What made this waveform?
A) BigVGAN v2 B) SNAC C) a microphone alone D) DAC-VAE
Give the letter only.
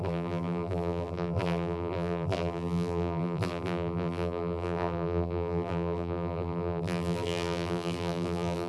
A